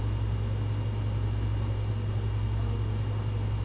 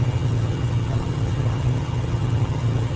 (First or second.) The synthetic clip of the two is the second